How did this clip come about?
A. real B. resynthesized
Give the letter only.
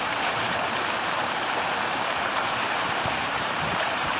B